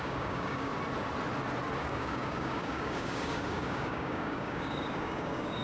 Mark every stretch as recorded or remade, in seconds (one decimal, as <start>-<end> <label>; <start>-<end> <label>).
0.0-0.7 remade; 0.7-1.8 recorded; 1.8-5.6 remade